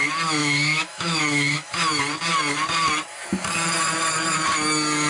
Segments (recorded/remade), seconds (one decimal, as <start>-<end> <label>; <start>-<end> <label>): 0.0-0.4 recorded; 0.4-2.0 remade; 2.0-5.1 recorded